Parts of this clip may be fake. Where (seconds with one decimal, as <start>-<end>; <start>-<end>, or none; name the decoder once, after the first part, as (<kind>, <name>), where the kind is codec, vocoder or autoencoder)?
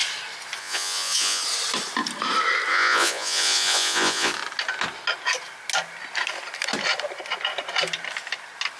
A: 0.6-1.4 (vocoder, Vocos); 2.7-4.3